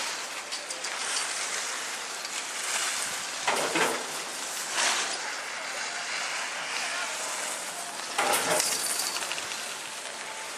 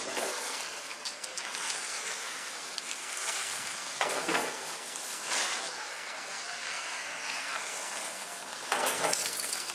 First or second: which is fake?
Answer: second